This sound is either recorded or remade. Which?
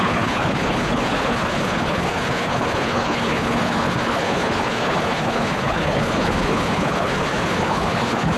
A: remade